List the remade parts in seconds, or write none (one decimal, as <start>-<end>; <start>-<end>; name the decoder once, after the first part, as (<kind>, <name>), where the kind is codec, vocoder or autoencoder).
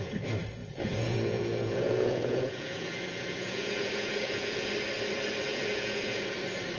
0.6-4.7 (vocoder, Vocos); 5.5-6.2